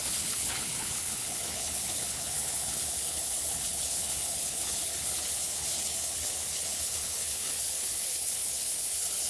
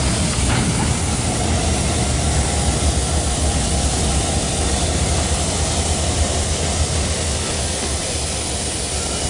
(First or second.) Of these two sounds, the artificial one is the first